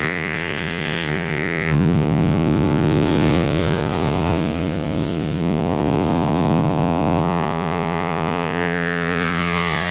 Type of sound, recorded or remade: remade